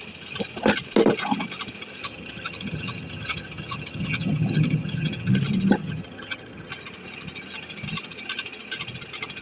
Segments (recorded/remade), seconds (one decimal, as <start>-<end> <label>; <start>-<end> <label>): 0.0-2.0 recorded; 2.0-5.3 remade; 5.3-5.8 recorded; 5.8-6.7 remade; 6.7-9.4 recorded